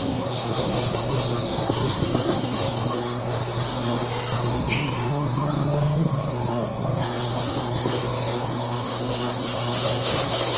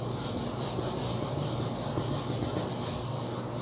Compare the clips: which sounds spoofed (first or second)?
first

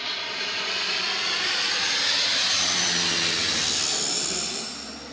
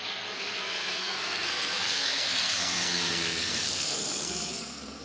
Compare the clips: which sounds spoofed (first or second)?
second